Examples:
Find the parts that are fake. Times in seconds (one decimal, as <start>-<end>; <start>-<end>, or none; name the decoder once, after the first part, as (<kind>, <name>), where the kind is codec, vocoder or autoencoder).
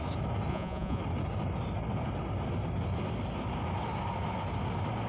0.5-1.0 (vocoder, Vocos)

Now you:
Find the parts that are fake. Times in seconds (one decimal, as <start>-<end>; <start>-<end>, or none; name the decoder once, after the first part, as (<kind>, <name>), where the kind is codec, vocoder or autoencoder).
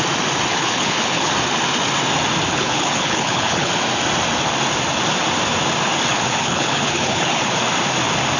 0.5-1.3 (codec, HILCodec); 2.5-3.7; 6.1-7.5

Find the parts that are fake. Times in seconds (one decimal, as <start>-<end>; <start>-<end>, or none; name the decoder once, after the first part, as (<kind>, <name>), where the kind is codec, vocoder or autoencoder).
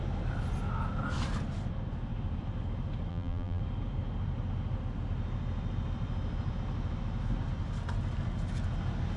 3.1-3.6 (vocoder, BigVGAN v2)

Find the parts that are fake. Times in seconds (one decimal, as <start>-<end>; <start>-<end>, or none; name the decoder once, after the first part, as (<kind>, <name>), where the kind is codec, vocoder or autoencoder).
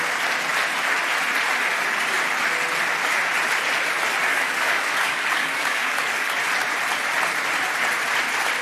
4.3-6.3 (codec, DAC)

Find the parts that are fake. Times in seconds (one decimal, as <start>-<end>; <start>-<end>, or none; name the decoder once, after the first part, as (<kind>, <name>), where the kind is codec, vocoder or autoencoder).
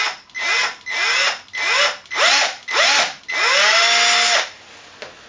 none